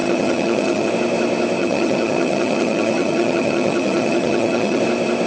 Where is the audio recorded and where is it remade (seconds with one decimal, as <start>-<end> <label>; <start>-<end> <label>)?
0.0-0.9 remade; 0.9-1.6 recorded; 1.6-4.8 remade; 4.8-5.3 recorded